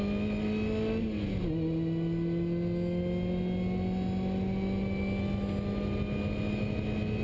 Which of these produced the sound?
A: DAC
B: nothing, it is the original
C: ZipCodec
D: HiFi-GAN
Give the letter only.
B